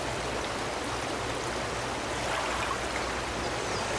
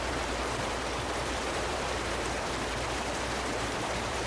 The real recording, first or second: first